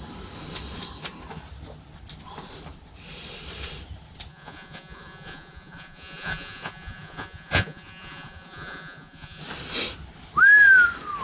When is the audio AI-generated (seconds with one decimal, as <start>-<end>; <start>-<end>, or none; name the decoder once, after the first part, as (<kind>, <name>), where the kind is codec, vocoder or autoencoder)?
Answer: 4.3-9.4 (vocoder, Vocos)